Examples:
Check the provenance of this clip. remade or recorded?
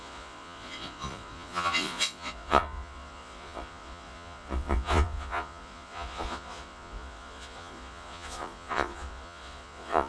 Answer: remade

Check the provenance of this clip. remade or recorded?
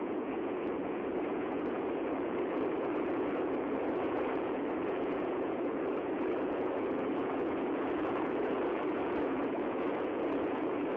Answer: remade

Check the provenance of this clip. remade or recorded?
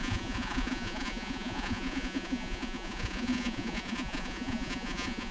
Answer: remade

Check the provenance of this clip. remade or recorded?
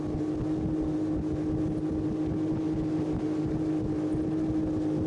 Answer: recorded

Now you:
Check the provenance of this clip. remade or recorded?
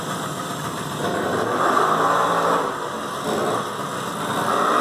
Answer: recorded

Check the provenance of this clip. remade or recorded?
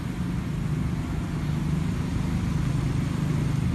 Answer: recorded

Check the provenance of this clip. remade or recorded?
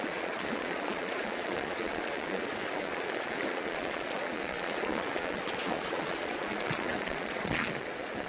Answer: remade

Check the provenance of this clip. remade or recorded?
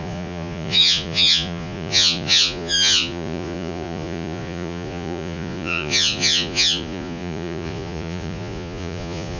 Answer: remade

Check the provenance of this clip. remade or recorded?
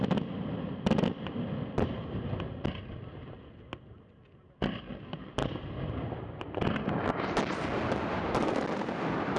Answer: recorded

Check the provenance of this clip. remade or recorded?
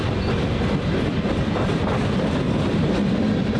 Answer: recorded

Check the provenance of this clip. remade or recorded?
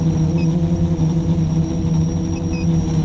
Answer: recorded